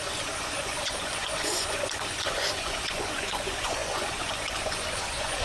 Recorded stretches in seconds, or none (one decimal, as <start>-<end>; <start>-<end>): none